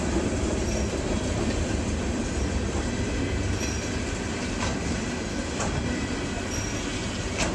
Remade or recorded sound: recorded